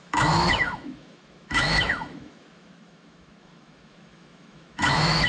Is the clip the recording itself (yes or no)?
no